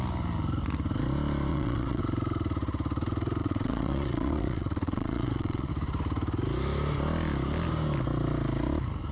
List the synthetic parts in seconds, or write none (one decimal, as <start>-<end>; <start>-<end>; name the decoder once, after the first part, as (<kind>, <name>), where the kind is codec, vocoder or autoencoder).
1.5-2.0 (vocoder, WaveNeXt); 3.4-5.7

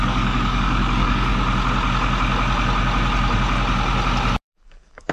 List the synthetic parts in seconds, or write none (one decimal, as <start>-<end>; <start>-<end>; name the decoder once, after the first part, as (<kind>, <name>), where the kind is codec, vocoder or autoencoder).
0.0-1.3 (codec, DAC); 4.4-5.1

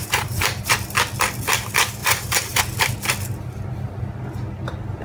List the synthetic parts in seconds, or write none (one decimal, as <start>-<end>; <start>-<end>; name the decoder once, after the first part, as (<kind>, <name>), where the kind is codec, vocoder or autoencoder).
0.0-0.7 (vocoder, BigVGAN v2); 2.0-2.6